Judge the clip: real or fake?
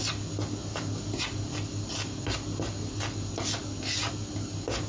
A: real